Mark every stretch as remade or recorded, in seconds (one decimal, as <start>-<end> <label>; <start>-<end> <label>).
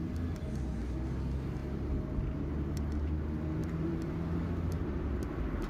0.0-3.6 recorded; 3.6-4.1 remade; 4.1-5.7 recorded